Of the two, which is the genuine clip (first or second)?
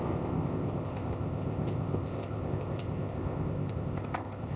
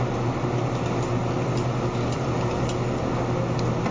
second